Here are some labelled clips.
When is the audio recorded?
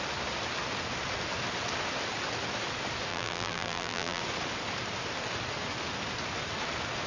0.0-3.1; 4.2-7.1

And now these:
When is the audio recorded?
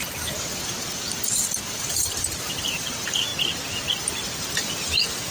3.3-5.3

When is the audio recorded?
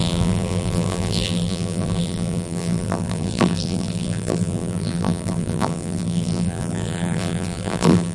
none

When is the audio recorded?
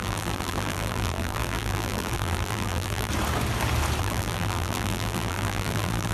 3.1-4.0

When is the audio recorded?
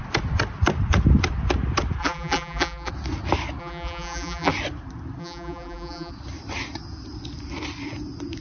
0.0-2.0; 2.9-3.6; 4.5-5.2; 6.1-8.4